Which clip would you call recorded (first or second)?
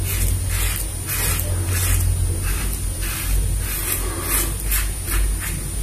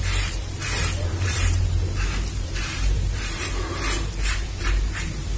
first